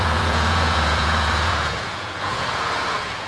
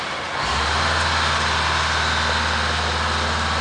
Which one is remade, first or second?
first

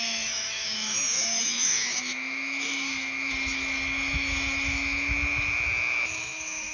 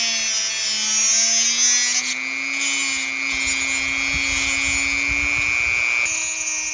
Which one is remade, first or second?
first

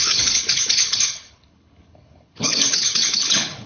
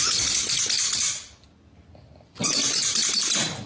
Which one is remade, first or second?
first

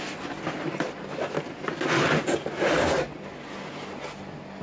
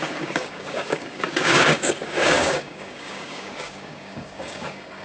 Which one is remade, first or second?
second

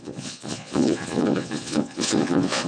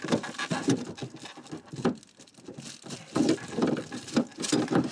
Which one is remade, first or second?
first